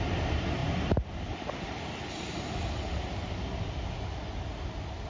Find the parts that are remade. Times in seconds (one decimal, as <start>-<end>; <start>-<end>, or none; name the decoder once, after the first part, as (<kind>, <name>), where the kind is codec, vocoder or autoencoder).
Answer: none